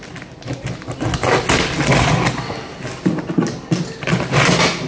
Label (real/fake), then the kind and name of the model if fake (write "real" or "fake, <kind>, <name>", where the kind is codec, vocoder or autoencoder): real